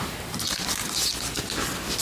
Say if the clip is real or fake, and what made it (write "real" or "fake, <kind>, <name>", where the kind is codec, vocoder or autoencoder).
real